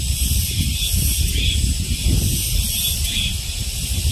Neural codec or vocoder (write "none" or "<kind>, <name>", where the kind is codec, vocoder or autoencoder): none